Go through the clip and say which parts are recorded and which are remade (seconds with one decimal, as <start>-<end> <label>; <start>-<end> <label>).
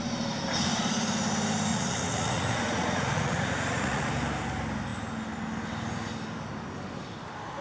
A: 0.0-1.7 recorded; 1.7-4.1 remade; 4.1-7.6 recorded